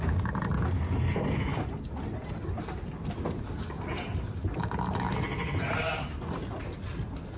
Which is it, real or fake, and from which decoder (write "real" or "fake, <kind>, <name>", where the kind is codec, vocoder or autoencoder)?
real